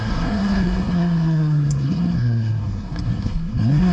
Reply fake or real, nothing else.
fake